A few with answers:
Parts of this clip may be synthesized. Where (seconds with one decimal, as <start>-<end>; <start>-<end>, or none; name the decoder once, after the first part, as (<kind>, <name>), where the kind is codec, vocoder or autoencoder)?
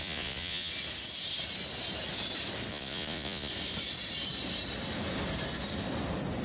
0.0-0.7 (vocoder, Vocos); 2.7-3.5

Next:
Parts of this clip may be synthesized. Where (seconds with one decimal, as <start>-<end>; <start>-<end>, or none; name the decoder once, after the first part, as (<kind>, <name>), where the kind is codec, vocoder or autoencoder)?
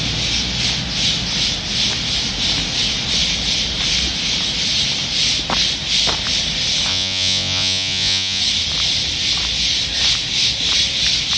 6.9-8.4 (vocoder, Vocos)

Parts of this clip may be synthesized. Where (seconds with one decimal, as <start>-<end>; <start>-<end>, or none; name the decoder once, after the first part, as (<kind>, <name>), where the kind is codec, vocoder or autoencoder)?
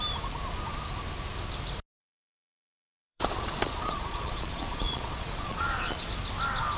2.0-6.1 (vocoder, Vocos)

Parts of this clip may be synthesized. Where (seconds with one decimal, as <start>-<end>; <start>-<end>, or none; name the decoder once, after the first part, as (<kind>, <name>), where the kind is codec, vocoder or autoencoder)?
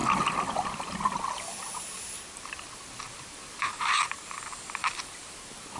none